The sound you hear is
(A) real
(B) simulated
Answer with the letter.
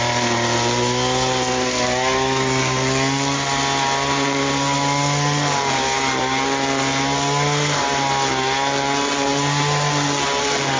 A